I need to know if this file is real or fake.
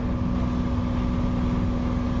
real